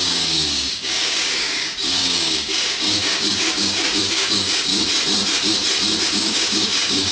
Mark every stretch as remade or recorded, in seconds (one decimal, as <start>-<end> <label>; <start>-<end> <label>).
0.0-4.7 remade; 4.7-6.1 recorded; 6.1-7.1 remade